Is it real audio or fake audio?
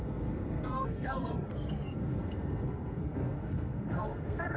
fake